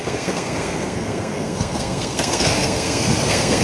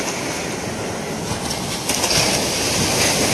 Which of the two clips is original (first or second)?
second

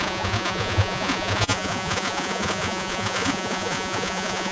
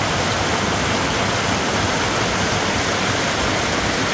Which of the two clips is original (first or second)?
second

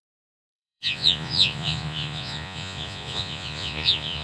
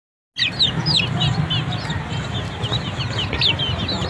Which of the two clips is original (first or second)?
second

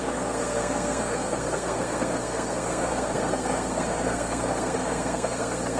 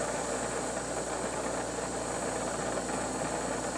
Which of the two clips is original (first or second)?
second